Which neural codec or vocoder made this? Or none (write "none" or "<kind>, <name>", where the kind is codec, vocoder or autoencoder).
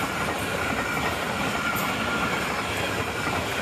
none